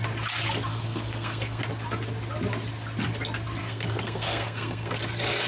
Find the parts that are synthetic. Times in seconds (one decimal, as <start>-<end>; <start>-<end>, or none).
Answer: 0.7-1.6; 3.6-4.9